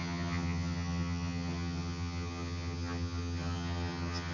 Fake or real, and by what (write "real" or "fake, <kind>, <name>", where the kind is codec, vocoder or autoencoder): fake, vocoder, HiFi-GAN